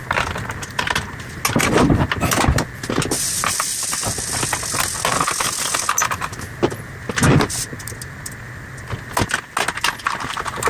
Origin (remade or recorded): recorded